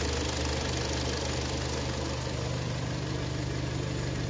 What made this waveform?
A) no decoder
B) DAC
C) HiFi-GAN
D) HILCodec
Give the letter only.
A